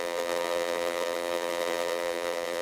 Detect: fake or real fake